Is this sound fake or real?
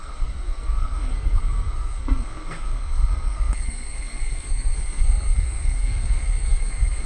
fake